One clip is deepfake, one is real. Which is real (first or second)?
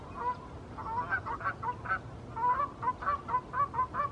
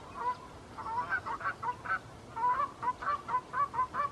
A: first